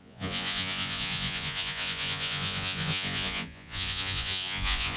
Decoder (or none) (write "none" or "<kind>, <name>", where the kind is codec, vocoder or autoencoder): vocoder, Vocos